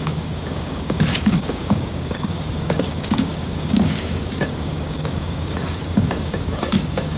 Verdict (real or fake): fake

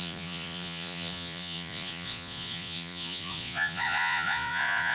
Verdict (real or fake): fake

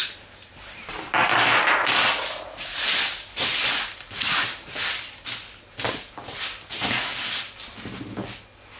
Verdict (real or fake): real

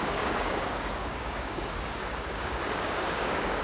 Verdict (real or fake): fake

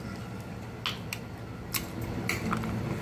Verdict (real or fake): real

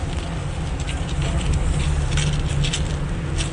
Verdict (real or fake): real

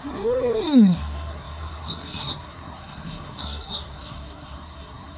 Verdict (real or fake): fake